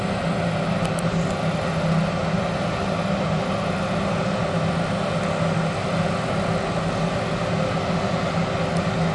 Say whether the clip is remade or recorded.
recorded